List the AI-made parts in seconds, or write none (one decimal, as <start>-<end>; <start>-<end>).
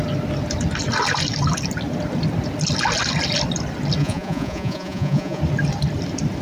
4.0-5.4